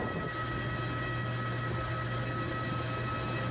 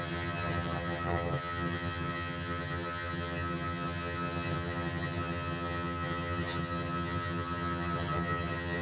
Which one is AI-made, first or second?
second